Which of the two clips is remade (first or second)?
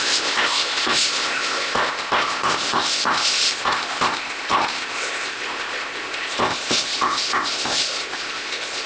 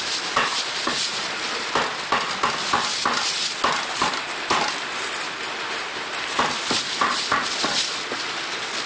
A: first